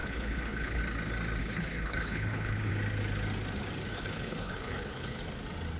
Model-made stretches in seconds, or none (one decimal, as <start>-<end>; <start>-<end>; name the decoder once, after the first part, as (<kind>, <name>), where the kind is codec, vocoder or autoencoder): 0.0-0.8 (codec, HILCodec); 1.4-2.7; 3.9-5.2